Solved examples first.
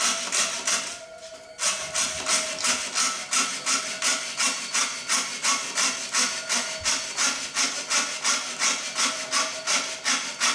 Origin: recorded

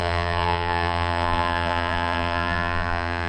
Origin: remade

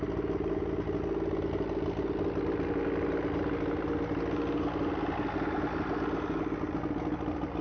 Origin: recorded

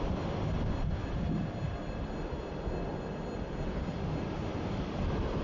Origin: recorded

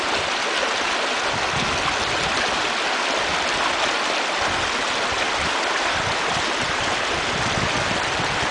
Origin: recorded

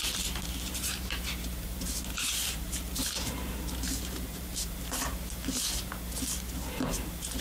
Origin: remade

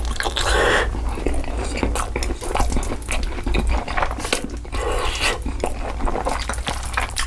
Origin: recorded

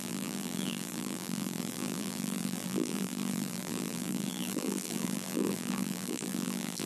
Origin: remade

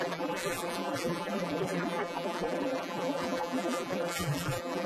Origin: remade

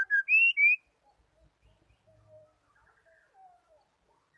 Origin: recorded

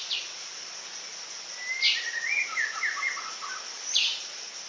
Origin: recorded